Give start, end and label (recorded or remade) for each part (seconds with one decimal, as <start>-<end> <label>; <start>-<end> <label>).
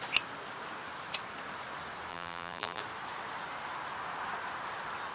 0.0-2.1 recorded; 2.1-2.8 remade; 2.8-5.1 recorded